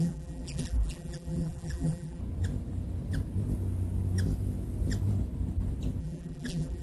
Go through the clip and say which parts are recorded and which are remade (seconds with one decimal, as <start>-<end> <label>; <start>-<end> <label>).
0.0-2.2 remade; 2.2-6.0 recorded; 6.0-6.8 remade